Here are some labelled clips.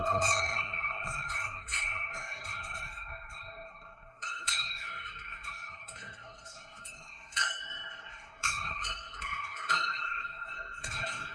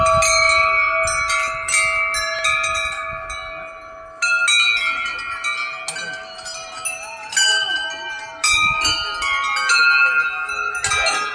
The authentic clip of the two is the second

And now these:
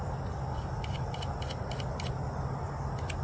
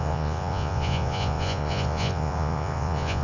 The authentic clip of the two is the first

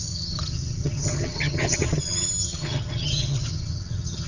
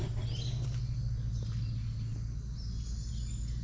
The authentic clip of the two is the second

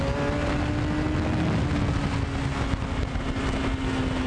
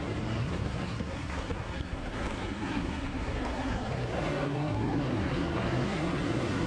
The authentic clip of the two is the first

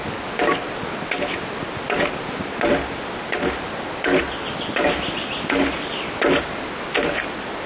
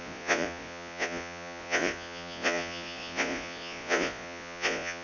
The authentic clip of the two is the first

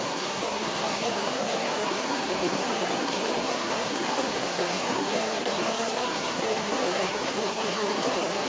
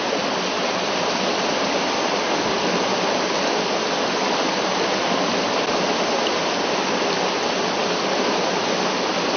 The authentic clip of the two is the second